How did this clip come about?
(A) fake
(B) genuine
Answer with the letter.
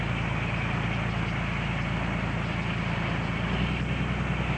B